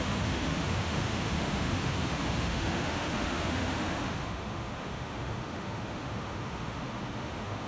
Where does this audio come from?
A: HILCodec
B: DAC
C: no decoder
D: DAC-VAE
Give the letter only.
D